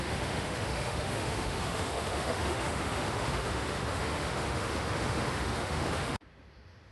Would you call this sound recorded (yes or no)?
no